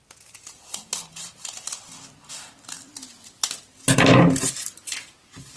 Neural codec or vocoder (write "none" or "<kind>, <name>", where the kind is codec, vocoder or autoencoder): none